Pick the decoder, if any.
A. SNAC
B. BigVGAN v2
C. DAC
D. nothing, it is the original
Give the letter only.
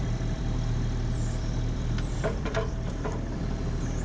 B